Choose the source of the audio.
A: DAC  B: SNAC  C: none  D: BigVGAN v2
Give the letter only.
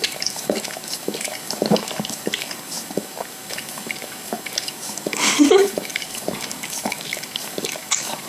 A